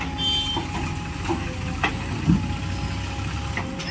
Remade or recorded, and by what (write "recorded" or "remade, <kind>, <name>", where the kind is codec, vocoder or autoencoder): recorded